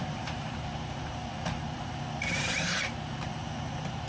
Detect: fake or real fake